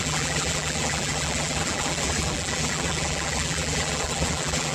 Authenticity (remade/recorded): remade